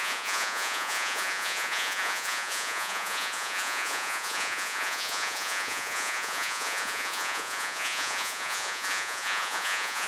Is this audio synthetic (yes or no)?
yes